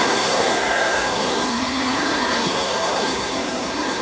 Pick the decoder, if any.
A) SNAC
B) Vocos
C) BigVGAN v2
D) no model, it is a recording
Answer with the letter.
A